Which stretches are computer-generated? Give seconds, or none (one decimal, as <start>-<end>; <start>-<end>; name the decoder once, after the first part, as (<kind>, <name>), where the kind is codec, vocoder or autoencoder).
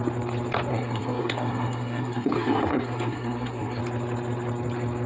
0.7-3.8 (codec, SNAC)